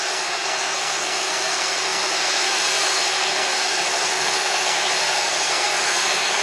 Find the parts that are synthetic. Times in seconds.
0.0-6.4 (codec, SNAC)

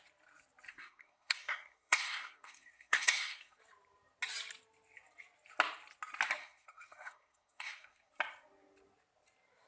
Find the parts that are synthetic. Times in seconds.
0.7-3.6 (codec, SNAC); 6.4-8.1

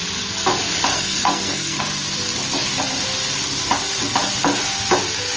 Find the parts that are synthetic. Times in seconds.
0.9-1.8 (codec, SNAC)